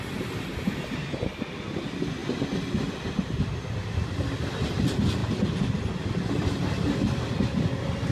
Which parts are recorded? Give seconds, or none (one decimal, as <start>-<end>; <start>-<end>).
0.0-8.1